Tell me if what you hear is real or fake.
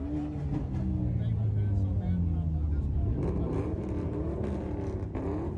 real